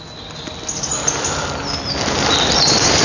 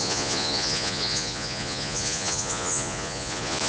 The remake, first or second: second